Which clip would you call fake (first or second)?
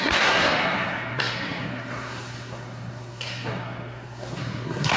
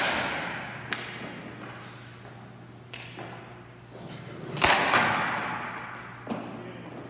first